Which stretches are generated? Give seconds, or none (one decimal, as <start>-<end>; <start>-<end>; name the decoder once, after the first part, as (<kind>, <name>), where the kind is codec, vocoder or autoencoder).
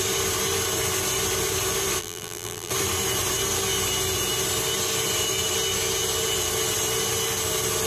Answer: 2.0-2.7 (vocoder, BigVGAN v2)